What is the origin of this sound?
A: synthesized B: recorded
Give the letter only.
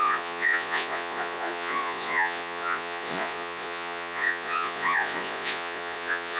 A